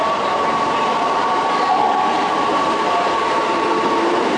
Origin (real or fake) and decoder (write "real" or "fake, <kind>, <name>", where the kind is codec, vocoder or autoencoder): fake, vocoder, BigVGAN v2